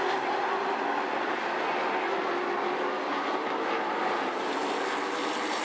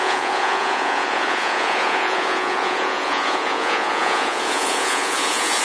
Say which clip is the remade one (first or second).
second